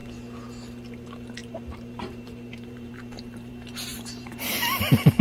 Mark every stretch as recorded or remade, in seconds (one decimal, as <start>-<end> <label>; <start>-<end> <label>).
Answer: 0.0-1.4 recorded; 1.4-3.5 remade; 3.5-3.9 recorded; 3.9-4.8 remade; 4.8-5.2 recorded